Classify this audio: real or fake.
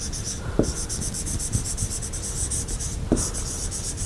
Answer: fake